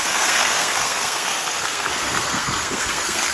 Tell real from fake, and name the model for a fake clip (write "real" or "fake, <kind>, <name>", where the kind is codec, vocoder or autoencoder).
fake, codec, SNAC